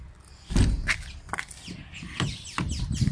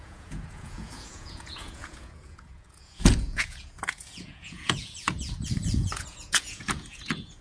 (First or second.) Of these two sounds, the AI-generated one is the second